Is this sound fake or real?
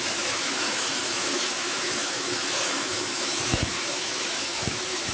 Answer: fake